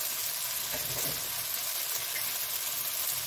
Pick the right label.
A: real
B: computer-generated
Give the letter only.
A